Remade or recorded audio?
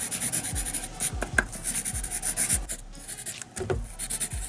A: recorded